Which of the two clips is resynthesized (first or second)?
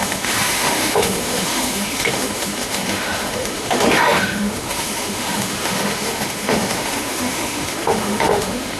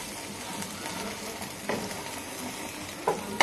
first